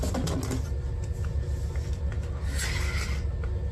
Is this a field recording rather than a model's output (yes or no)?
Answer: yes